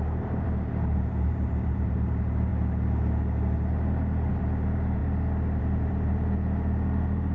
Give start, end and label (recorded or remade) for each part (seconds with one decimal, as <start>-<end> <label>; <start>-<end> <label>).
0.0-2.5 remade; 2.5-4.3 recorded; 4.3-5.0 remade; 5.0-5.6 recorded; 5.6-7.3 remade